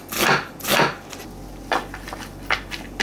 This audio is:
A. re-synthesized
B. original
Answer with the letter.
B